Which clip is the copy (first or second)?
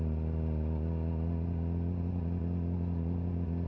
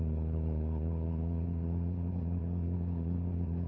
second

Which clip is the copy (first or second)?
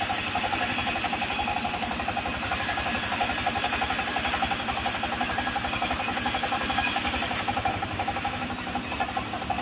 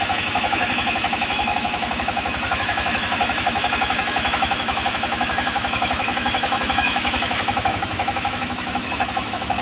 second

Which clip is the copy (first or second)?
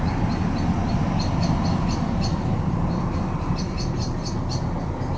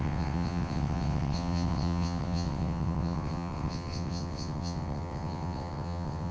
second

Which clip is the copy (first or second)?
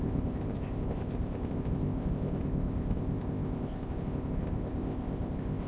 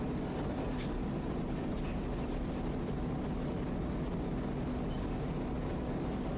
first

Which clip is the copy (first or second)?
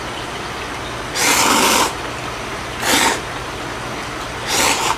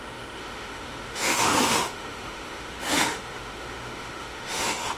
second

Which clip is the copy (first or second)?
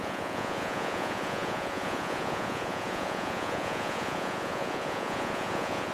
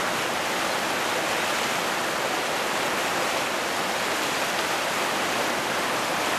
first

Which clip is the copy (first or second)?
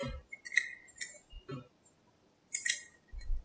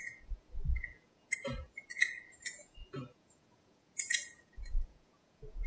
second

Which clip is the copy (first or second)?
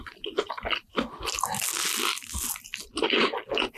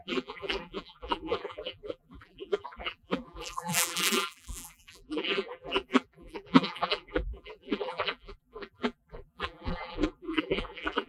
second